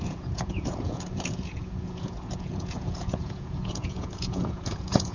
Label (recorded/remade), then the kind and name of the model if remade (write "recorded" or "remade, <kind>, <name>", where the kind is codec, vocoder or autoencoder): remade, vocoder, Vocos